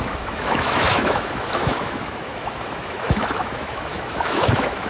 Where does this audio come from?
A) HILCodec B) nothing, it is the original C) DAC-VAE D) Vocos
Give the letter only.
C